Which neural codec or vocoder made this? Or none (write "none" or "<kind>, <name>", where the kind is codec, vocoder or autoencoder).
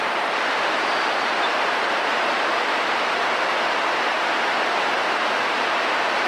vocoder, BigVGAN v2